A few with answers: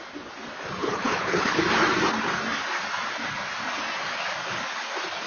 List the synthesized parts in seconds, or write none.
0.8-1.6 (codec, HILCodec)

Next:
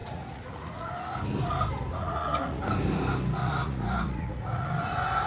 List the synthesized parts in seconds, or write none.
0.0-0.9 (vocoder, Vocos); 2.0-2.6; 3.4-4.7